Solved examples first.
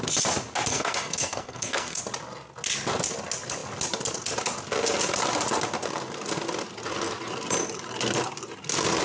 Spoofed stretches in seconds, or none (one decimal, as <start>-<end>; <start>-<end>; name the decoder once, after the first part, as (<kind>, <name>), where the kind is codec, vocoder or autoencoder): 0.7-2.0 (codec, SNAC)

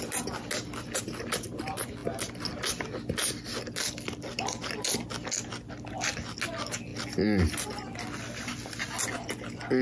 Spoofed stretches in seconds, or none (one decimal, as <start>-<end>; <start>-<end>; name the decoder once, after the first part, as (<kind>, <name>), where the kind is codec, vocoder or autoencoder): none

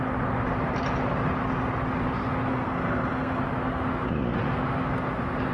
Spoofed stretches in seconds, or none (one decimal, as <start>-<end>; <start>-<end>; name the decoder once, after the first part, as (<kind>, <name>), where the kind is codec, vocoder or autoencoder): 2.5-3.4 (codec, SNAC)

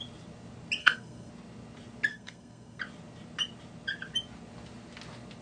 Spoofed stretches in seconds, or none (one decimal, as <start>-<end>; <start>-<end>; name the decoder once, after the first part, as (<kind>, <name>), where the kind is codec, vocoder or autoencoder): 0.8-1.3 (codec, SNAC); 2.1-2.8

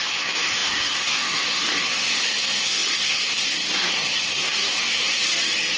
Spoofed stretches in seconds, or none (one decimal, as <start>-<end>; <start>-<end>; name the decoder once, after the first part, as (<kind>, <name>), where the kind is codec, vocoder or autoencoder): 0.0-5.2 (codec, SNAC)